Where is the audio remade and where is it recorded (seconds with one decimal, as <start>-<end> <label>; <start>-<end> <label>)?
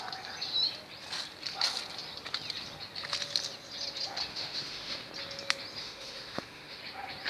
0.0-4.3 recorded; 4.3-5.1 remade; 5.1-5.8 recorded; 5.8-6.8 remade; 6.8-7.3 recorded